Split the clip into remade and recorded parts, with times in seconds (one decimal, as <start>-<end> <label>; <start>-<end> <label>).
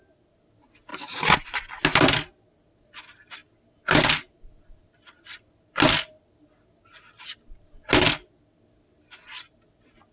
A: 0.0-10.1 recorded